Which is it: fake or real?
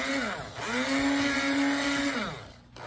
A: real